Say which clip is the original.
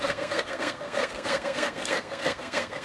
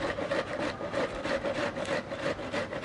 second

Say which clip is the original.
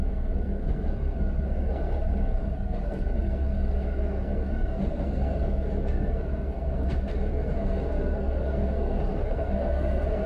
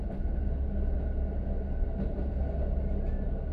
second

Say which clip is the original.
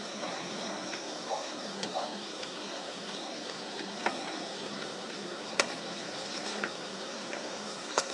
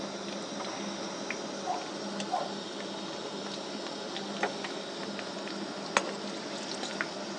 second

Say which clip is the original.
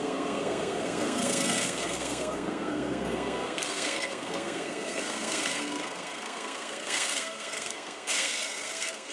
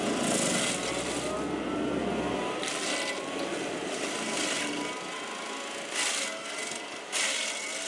second